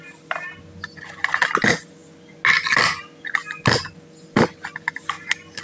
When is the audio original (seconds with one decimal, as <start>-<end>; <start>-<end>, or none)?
0.0-5.6